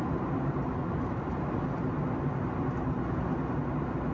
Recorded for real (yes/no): yes